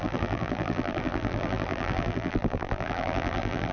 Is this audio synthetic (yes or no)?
yes